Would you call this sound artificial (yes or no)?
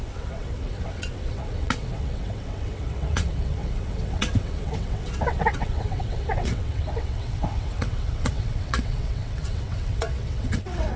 yes